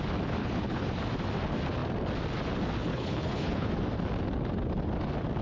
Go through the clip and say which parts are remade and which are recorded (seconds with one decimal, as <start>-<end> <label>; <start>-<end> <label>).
0.0-0.4 recorded; 0.4-0.9 remade; 0.9-2.9 recorded; 2.9-3.7 remade; 3.7-5.4 recorded